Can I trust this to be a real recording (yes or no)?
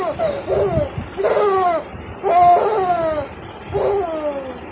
yes